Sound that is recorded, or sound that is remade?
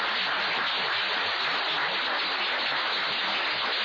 recorded